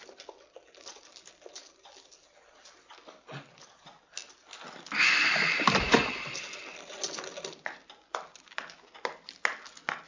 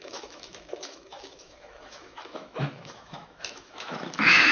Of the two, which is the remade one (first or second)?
second